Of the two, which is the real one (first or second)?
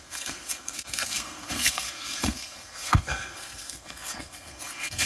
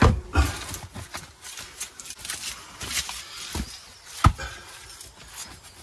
second